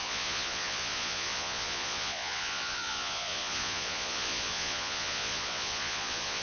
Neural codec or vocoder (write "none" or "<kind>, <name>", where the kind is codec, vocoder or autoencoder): vocoder, Vocos